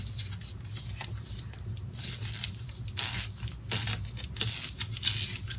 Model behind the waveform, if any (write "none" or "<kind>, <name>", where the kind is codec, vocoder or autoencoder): none